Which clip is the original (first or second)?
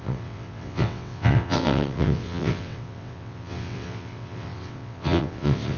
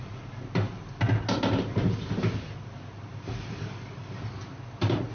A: second